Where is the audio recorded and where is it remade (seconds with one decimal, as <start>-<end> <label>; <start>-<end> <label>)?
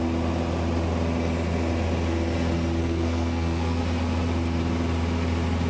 0.0-2.8 recorded; 2.8-3.8 remade; 3.8-5.7 recorded